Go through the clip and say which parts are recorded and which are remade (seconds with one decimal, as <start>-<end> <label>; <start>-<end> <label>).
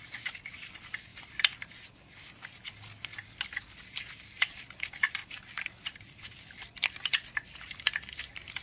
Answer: 0.0-8.6 recorded